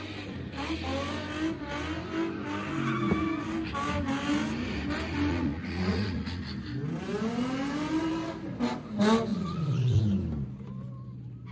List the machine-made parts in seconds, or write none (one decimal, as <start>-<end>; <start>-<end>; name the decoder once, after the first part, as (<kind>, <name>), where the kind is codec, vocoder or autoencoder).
5.3-6.4 (vocoder, Vocos); 9.3-10.0